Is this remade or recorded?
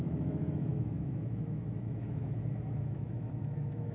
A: remade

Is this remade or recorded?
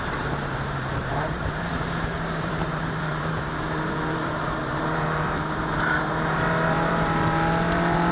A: remade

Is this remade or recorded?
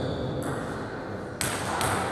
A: recorded